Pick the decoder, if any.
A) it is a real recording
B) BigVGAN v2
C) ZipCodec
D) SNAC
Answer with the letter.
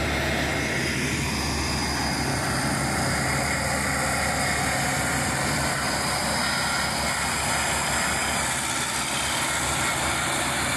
A